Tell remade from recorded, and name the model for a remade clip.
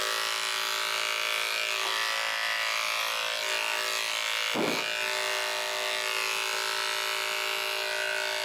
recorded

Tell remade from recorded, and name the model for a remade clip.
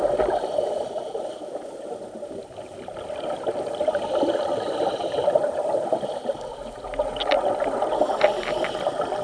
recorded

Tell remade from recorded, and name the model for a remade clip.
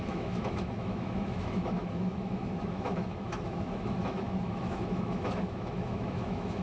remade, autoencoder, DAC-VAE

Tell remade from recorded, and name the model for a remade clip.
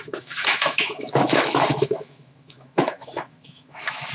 remade, autoencoder, DAC-VAE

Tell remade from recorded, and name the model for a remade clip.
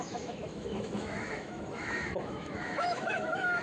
remade, autoencoder, DAC-VAE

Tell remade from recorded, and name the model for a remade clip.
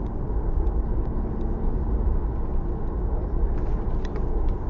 recorded